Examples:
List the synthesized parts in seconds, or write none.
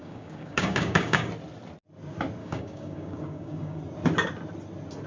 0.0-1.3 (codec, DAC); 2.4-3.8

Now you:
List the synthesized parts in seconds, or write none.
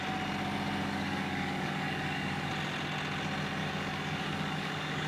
0.8-2.5 (codec, DAC); 3.6-5.1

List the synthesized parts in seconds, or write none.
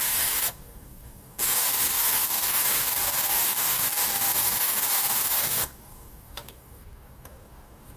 0.0-8.0 (codec, DAC)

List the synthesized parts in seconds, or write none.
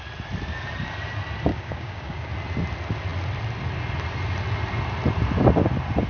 1.5-2.3 (codec, DAC)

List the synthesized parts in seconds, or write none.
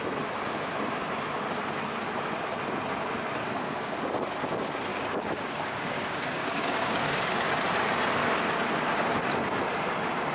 3.4-4.0 (codec, DAC); 4.9-7.5